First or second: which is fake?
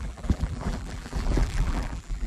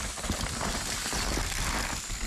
first